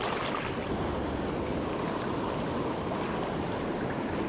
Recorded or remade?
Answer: recorded